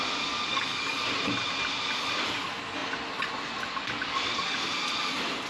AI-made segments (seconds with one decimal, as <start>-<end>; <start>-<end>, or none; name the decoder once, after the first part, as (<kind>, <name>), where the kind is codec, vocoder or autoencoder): 0.5-1.0 (codec, DAC)